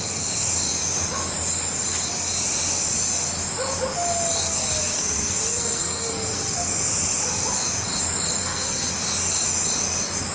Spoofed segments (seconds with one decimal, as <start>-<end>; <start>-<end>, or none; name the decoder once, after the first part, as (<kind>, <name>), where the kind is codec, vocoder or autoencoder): 4.3-6.8 (codec, SNAC); 8.4-8.9